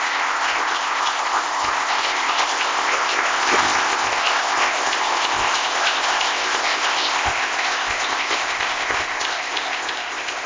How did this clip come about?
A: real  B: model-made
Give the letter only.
B